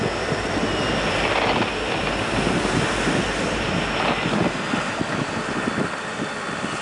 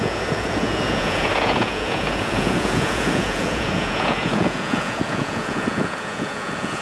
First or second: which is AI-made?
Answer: second